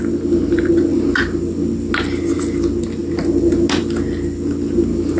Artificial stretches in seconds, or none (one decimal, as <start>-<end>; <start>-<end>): none